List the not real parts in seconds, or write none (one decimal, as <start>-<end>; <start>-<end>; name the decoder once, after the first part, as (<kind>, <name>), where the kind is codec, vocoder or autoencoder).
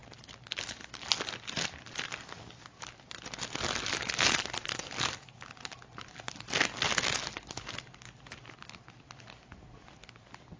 none